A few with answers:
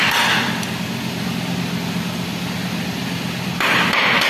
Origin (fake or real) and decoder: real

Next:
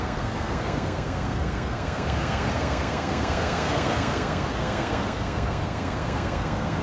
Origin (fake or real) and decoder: fake, codec, SNAC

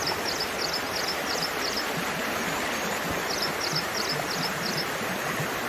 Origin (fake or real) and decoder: real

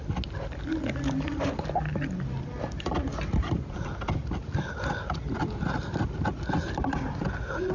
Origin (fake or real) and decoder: real